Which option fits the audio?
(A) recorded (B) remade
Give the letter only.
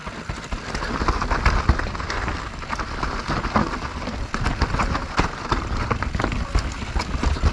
A